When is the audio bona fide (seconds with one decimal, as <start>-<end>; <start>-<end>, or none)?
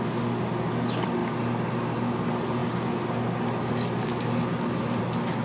0.0-5.4